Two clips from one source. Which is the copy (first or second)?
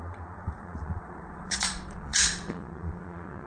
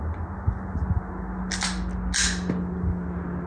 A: first